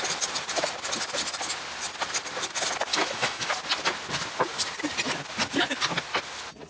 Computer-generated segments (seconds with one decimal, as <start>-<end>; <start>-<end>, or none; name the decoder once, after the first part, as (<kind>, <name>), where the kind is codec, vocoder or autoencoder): 2.9-3.5 (autoencoder, DAC-VAE)